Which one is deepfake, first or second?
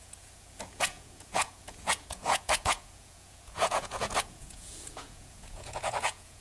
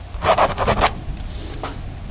first